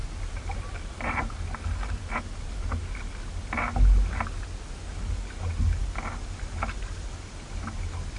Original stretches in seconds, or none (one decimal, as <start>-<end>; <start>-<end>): 0.0-8.2